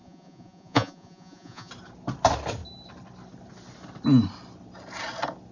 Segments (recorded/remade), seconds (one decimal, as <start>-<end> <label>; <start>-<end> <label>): 0.0-1.7 remade; 1.7-5.5 recorded